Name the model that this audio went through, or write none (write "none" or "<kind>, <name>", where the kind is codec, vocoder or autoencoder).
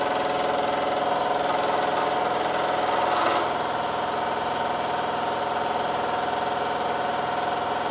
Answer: none